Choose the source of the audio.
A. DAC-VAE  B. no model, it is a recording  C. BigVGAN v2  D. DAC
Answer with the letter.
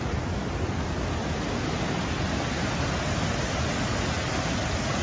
B